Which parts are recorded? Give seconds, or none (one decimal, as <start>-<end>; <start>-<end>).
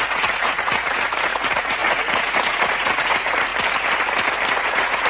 3.5-4.5